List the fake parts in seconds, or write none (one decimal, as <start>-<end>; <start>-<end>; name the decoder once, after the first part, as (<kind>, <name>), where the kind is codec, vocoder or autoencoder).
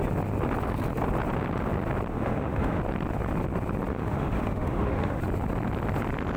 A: 2.1-2.8 (autoencoder, DAC-VAE); 3.9-5.2